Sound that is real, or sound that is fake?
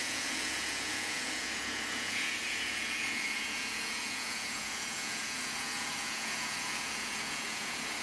fake